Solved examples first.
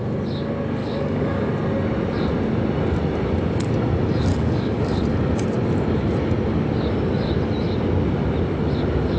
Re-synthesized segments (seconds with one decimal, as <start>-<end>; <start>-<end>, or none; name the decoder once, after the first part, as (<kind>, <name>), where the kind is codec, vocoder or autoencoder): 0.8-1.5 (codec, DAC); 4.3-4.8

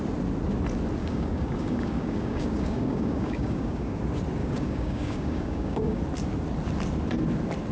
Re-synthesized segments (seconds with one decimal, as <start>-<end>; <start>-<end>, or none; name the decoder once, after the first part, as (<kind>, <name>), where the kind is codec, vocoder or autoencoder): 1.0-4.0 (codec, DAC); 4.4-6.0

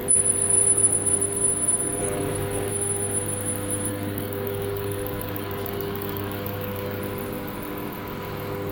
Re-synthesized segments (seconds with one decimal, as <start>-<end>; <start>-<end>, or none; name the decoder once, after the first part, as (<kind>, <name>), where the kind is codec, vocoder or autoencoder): 2.0-2.7 (codec, DAC); 3.9-7.0